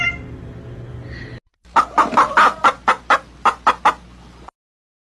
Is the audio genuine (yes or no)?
yes